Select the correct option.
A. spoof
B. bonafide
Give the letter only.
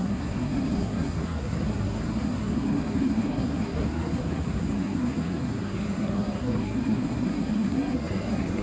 A